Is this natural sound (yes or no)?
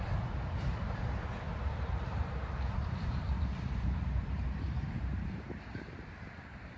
no